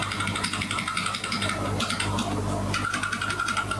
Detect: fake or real real